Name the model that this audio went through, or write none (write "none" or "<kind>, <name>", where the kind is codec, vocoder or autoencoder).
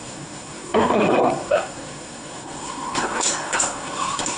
codec, SNAC